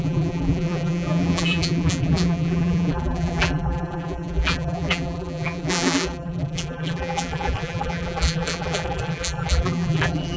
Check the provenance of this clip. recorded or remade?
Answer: remade